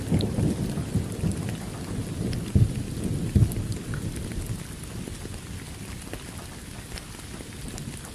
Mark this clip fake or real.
real